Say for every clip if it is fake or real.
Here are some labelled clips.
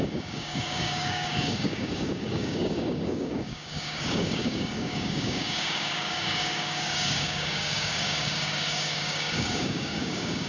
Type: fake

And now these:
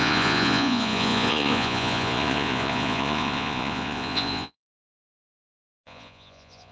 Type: fake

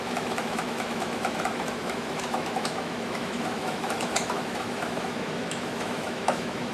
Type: fake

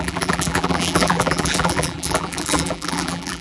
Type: fake